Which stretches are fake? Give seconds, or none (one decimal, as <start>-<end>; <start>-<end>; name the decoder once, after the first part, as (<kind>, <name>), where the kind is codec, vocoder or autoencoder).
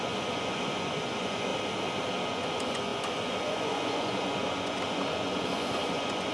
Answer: 0.0-1.5 (vocoder, Vocos); 2.3-6.3